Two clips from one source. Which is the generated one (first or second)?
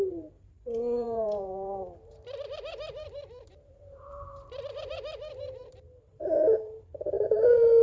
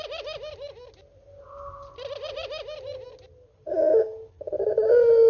first